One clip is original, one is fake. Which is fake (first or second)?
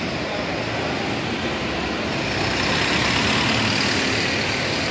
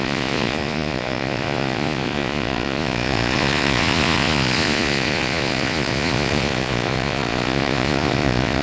second